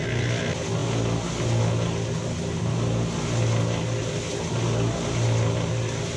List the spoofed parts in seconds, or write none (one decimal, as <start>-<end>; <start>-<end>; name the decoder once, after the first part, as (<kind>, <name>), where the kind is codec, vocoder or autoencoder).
none

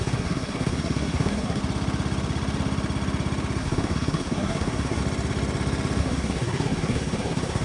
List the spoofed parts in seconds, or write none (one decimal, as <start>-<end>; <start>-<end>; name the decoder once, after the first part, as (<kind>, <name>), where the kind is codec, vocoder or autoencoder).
0.0-1.6 (codec, SNAC); 3.6-5.0; 6.0-7.6